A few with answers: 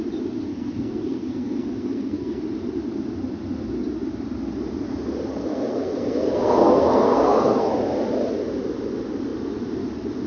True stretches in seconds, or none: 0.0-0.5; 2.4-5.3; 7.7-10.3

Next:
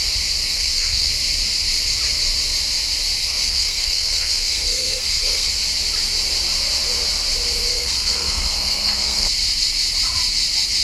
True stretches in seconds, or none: 0.0-0.4; 1.1-3.2; 5.5-7.7; 9.3-10.8

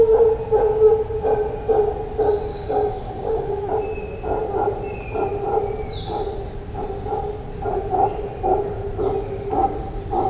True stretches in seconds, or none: 0.0-2.5; 3.6-10.3

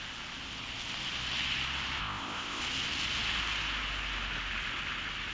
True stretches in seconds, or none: 0.0-2.0; 2.6-5.3

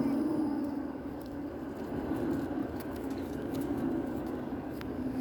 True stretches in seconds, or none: 0.0-0.5; 1.5-2.6